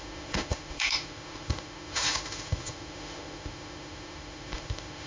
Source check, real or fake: fake